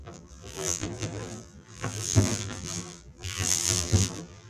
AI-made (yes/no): yes